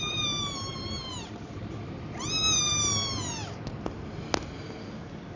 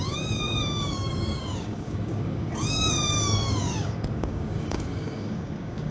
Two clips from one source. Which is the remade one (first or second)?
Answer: second